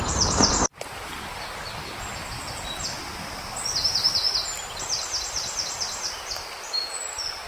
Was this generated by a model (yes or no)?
no